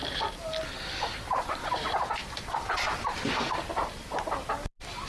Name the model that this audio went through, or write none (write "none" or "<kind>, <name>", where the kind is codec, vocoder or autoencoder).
none